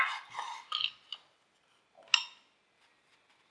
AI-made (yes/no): no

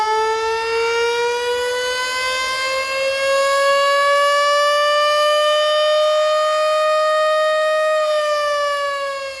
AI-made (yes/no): no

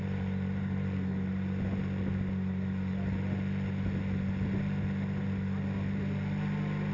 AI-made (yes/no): no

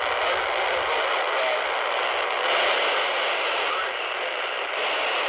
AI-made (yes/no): no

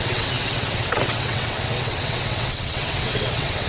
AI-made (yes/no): yes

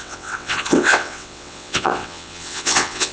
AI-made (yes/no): yes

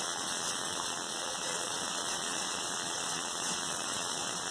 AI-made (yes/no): yes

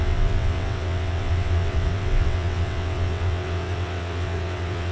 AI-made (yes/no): yes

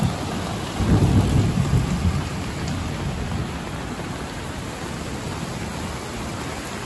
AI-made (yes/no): no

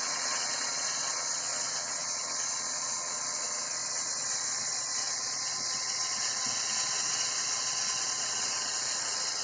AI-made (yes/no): yes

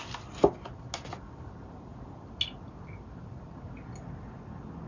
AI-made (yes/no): no